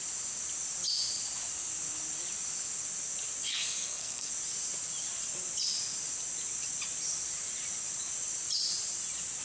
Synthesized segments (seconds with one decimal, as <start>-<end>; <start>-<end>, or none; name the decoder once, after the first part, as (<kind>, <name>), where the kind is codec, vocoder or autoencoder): 3.4-4.3 (codec, SNAC)